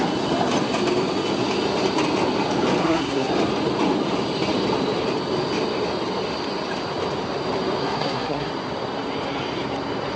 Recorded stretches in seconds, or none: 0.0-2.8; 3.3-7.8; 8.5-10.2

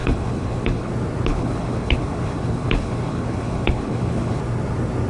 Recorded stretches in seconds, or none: 0.9-1.3; 4.4-5.1

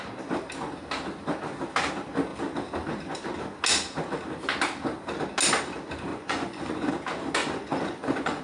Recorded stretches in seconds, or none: 0.0-6.1; 6.9-7.4

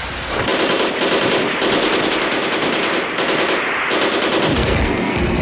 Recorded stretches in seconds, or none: 0.0-4.5

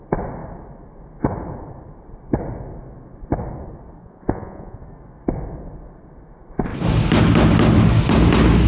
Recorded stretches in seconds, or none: 0.0-4.0; 4.8-8.7

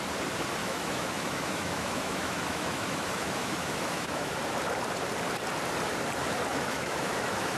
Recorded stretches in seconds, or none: 0.0-0.6; 4.3-6.5

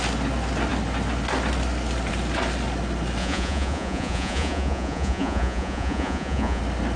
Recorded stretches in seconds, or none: 0.0-3.2; 6.6-7.0

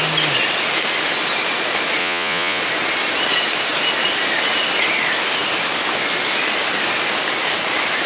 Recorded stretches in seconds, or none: 0.0-2.0; 2.6-8.1